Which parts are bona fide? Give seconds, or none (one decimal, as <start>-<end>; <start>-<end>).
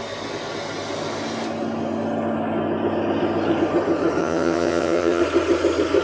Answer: 0.0-4.2; 5.2-6.0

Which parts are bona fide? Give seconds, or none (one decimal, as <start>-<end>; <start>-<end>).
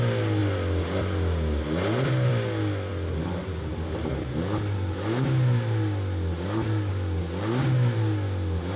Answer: 0.0-8.8